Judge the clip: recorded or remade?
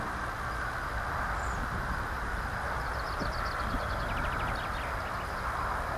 recorded